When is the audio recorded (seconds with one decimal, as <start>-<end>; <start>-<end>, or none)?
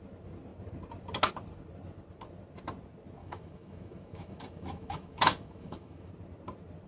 0.0-3.2; 6.1-6.9